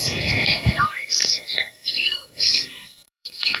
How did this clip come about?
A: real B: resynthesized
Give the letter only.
B